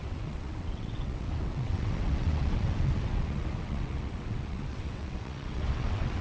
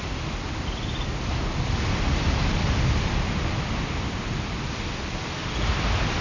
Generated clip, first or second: first